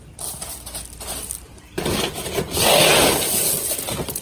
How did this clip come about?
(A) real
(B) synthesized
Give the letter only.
A